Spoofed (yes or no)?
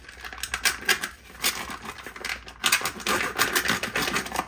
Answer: no